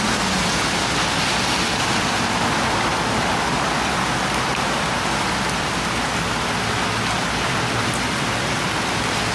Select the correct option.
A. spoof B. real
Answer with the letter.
B